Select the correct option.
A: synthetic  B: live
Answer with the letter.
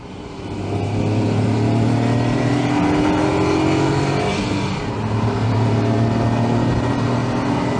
B